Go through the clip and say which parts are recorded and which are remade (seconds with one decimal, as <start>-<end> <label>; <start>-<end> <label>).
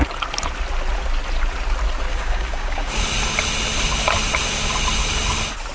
0.0-2.1 recorded; 2.1-3.0 remade; 3.0-5.7 recorded